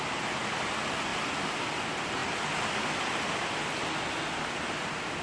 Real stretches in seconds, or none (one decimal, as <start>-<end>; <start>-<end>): 0.0-5.2